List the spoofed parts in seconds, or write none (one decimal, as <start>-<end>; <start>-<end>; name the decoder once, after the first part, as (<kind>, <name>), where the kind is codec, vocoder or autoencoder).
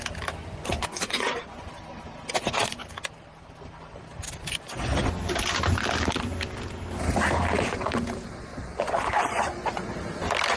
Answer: 0.4-1.7 (vocoder, Vocos); 8.5-10.0